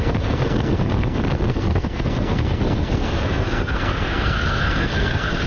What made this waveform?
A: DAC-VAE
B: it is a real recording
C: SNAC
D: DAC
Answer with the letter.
C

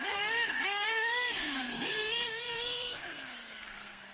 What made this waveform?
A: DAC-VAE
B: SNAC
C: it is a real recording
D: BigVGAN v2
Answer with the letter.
B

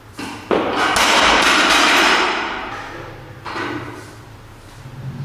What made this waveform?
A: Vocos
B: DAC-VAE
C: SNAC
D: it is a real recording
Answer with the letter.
D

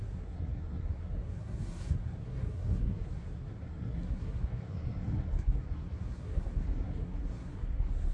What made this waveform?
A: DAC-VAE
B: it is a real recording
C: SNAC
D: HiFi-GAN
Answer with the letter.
C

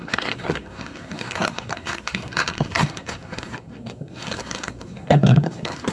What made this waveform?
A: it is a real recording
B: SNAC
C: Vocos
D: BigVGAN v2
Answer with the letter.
B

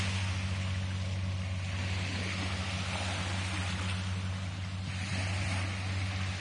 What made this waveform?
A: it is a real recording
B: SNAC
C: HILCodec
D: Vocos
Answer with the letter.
A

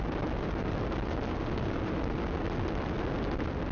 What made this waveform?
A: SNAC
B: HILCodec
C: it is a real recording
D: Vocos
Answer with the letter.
C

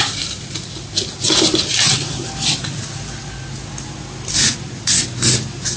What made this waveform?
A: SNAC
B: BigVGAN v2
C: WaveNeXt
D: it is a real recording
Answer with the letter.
D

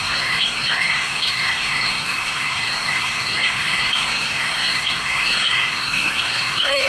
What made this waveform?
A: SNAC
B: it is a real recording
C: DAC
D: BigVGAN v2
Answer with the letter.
A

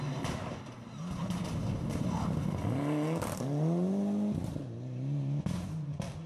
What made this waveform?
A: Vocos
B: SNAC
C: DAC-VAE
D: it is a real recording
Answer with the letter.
D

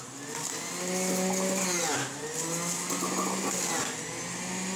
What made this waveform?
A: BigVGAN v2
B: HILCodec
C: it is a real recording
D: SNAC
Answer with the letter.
C